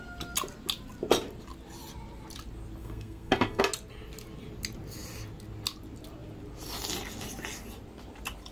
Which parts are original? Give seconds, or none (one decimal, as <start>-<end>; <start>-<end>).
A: 0.0-2.8; 3.6-8.5